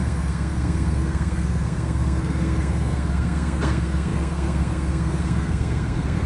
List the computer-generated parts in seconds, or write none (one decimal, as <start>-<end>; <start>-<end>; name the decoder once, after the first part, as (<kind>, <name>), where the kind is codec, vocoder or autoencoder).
0.0-6.3 (codec, SNAC)

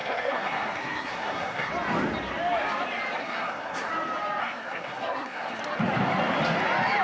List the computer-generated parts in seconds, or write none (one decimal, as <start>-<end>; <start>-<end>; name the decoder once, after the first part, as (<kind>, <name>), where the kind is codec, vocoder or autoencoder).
0.0-1.7 (codec, SNAC); 3.2-3.9; 4.4-5.6

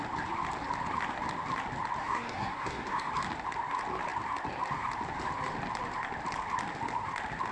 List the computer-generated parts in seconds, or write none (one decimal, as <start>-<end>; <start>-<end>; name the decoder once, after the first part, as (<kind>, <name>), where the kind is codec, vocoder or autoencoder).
2.0-3.1 (codec, SNAC)

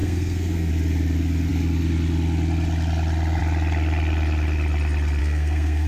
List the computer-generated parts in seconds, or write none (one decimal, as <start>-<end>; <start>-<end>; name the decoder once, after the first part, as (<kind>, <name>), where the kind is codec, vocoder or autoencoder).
0.0-0.7 (codec, SNAC); 5.2-5.9

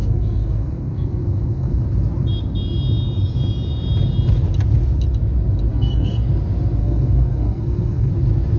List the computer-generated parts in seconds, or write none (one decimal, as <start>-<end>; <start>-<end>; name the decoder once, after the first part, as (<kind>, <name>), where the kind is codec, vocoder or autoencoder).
0.0-1.8 (codec, SNAC); 5.7-6.3; 6.8-8.1

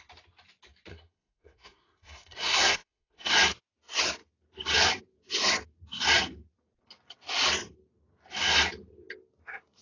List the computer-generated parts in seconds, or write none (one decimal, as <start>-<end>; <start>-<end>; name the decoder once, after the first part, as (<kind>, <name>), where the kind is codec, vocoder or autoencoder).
0.9-3.3 (codec, SNAC)